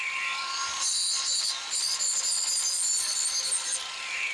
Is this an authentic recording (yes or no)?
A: yes